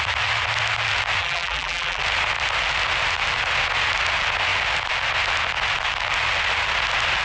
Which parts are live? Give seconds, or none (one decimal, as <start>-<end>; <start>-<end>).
0.0-1.2; 2.0-7.2